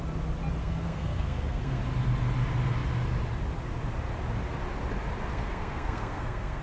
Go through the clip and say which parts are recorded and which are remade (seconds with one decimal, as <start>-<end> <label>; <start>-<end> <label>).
0.0-0.6 recorded; 0.6-1.8 remade; 1.8-5.3 recorded; 5.3-6.6 remade